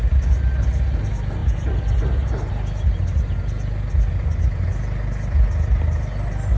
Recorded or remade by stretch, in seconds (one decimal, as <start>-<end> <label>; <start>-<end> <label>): 0.0-6.6 recorded